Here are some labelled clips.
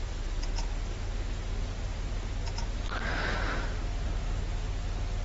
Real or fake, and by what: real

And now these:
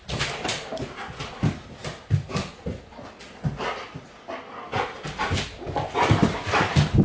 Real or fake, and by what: real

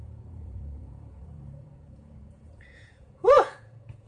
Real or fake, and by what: fake, vocoder, Vocos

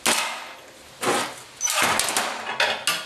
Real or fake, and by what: real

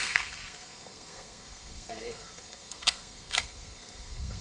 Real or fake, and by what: fake, codec, SNAC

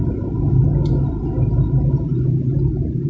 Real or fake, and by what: real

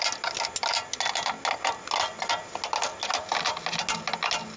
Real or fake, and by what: real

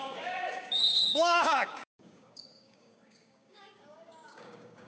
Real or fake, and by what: fake, codec, DAC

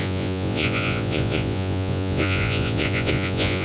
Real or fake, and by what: fake, vocoder, Vocos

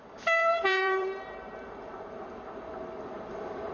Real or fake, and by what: fake, vocoder, BigVGAN v2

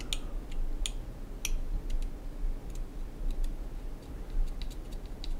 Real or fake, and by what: real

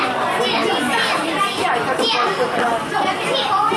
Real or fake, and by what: real